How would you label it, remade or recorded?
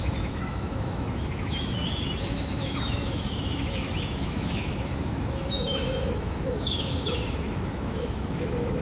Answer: remade